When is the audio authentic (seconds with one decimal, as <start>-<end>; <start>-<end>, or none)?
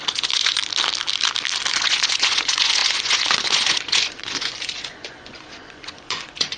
0.6-1.7